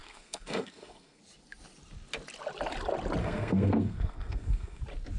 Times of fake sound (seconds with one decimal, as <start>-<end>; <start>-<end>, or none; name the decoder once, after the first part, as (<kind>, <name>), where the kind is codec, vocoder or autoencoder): 0.0-1.2 (codec, SNAC); 3.2-4.8